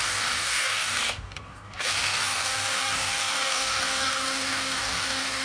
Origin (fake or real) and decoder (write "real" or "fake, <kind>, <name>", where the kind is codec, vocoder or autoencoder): fake, codec, DAC